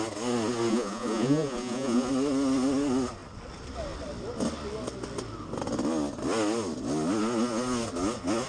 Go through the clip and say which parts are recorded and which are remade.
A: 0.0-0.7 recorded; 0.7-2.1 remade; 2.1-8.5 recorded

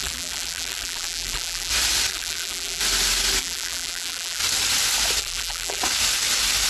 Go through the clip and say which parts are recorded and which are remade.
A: 0.0-1.7 remade; 1.7-2.1 recorded; 2.1-2.8 remade; 2.8-3.4 recorded; 3.4-4.4 remade; 4.4-5.2 recorded; 5.2-5.8 remade; 5.8-6.7 recorded

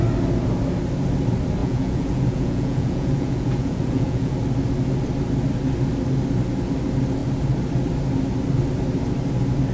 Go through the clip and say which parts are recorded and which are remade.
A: 0.0-1.6 recorded; 1.6-4.3 remade; 4.3-9.7 recorded